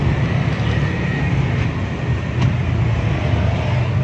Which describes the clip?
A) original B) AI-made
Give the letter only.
A